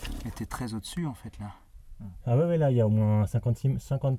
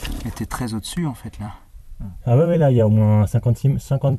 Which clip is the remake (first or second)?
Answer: second